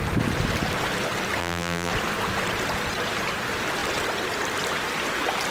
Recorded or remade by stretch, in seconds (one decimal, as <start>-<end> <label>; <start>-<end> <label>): 0.0-1.4 recorded; 1.4-1.9 remade; 1.9-5.5 recorded